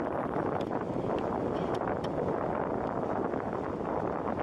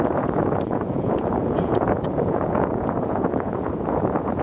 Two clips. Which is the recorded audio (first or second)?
first